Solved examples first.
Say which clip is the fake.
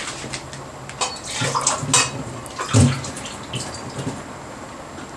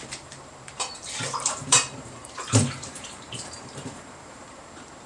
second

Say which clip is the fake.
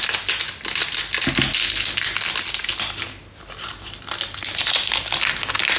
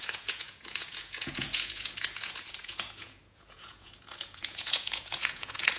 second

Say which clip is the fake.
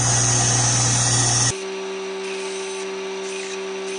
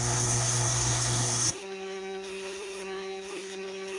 second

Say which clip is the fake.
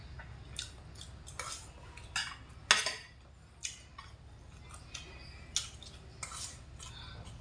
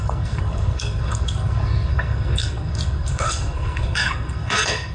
second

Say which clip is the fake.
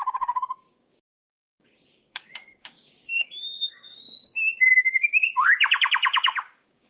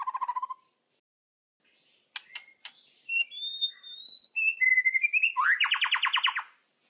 first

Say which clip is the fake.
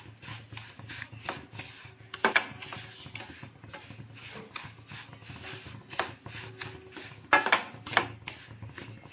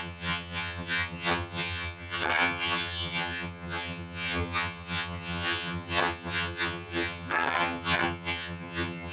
second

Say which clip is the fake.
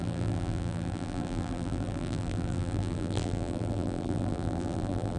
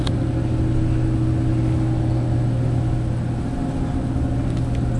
first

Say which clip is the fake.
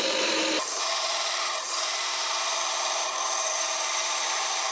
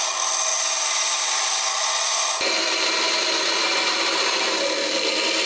first